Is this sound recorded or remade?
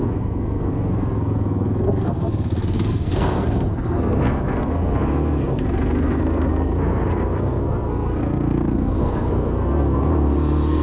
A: remade